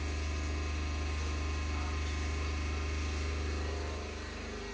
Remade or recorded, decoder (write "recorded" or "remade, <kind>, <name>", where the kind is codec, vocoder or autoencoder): recorded